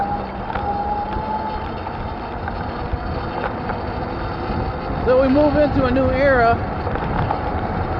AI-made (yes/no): no